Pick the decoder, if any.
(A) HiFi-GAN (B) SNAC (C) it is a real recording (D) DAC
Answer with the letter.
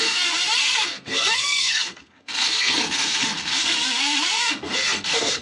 B